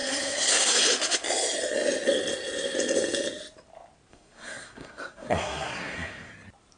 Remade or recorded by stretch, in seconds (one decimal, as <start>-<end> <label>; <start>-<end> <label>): 0.0-0.8 remade; 0.8-4.1 recorded; 4.1-6.3 remade; 6.3-6.8 recorded